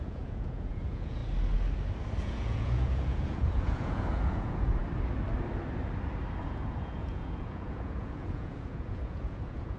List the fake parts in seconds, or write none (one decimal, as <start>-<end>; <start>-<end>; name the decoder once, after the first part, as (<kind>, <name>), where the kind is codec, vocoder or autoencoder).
0.0-1.2 (vocoder, Vocos); 2.2-4.8; 6.4-9.8